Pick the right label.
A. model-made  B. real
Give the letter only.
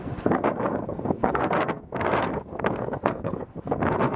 A